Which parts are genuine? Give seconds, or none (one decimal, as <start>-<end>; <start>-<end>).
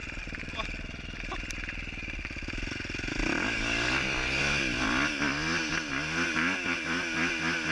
0.0-7.7